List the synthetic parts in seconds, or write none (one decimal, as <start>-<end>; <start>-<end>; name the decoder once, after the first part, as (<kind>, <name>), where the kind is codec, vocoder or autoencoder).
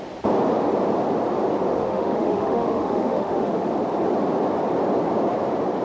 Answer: 1.7-3.7 (autoencoder, DAC-VAE)